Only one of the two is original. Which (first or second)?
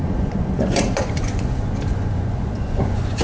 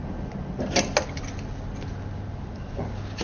second